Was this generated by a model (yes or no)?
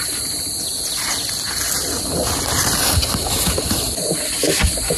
no